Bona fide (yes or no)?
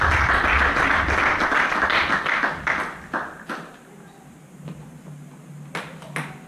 yes